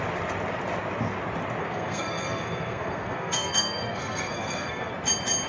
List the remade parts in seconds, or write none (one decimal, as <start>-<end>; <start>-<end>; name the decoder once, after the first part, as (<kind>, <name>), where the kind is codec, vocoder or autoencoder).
1.6-4.9 (codec, SNAC)